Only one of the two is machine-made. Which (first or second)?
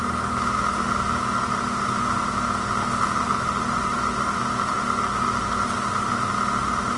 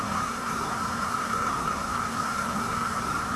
second